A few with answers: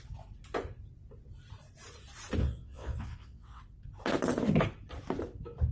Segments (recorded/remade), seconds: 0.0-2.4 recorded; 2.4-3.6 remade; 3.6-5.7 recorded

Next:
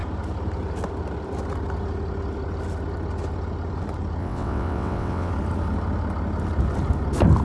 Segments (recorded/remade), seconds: 0.0-4.2 recorded; 4.2-5.3 remade; 5.3-7.4 recorded